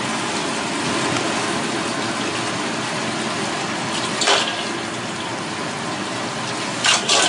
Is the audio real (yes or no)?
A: yes